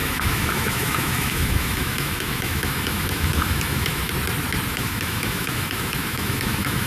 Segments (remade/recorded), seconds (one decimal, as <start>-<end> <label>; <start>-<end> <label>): 0.0-4.1 remade; 4.1-4.7 recorded; 4.7-6.9 remade

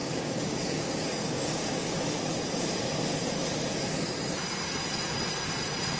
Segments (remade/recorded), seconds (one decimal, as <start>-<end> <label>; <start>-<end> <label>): 0.0-2.1 remade; 2.1-6.0 recorded

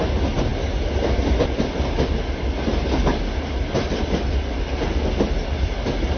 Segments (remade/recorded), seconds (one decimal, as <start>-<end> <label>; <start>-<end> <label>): 0.0-6.2 recorded

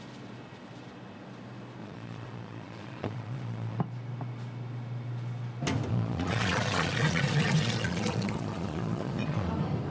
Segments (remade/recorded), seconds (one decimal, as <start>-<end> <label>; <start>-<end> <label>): 0.0-1.8 recorded; 1.8-3.8 remade; 3.8-5.9 recorded; 5.9-9.5 remade; 9.5-9.9 recorded

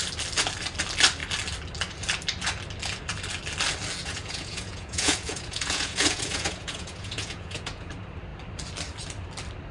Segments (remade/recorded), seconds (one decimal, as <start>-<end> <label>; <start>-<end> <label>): 0.0-4.0 recorded; 4.0-7.9 remade; 7.9-9.7 recorded

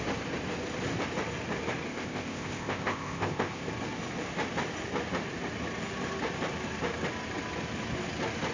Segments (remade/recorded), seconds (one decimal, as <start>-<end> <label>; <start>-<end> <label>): 0.0-1.9 recorded; 1.9-3.7 remade; 3.7-8.5 recorded